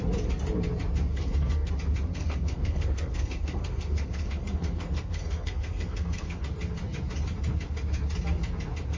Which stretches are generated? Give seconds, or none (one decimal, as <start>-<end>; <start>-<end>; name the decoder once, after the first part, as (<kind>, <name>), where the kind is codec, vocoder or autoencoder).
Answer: 1.1-1.7 (codec, SNAC); 2.1-6.4